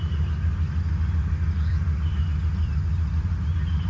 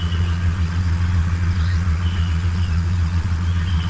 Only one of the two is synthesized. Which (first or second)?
second